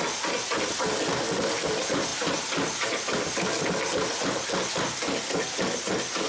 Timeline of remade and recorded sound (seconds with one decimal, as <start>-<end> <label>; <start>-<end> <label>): 0.0-6.3 recorded